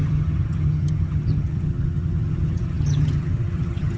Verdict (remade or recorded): remade